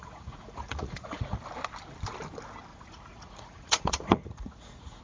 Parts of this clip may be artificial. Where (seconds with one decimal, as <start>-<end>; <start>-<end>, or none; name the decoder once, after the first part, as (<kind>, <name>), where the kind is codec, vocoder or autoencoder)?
0.0-1.4 (vocoder, Vocos); 2.7-5.0